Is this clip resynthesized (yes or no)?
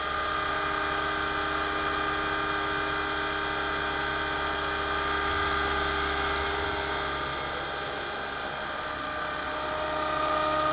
no